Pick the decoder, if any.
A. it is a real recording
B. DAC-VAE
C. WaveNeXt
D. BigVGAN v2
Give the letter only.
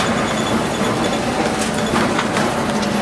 A